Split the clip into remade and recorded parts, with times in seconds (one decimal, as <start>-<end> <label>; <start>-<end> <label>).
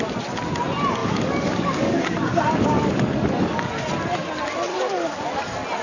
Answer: 0.0-1.0 recorded; 1.0-3.7 remade; 3.7-4.7 recorded; 4.7-5.3 remade; 5.3-5.8 recorded